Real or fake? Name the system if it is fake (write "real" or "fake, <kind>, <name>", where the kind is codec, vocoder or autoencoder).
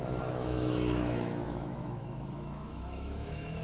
fake, autoencoder, DAC-VAE